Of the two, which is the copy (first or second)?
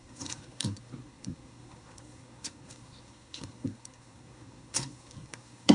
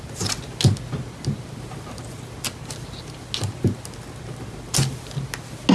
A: first